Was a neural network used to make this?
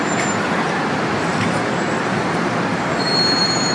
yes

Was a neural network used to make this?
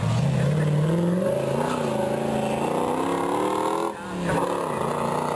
no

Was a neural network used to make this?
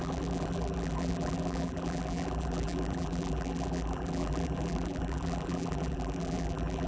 yes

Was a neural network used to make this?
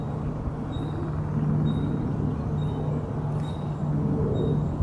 no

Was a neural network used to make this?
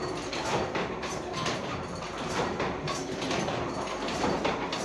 yes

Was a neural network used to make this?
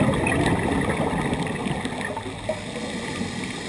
no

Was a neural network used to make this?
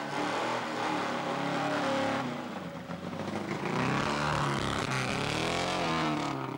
no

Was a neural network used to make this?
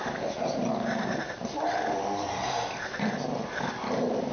no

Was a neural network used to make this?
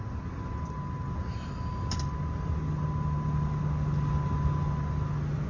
no